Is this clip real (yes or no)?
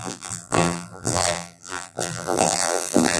no